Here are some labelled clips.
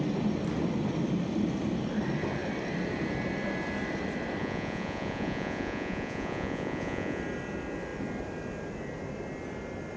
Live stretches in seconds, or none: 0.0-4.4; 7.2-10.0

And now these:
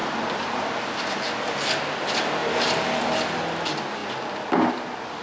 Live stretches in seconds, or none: 0.0-5.2

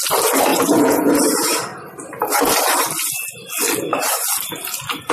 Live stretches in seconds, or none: 0.0-0.5; 1.1-5.1

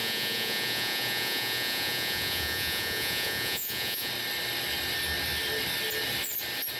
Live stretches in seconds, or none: 4.1-6.8

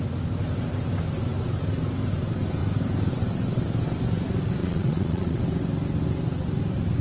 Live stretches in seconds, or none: 0.0-4.6; 5.4-7.0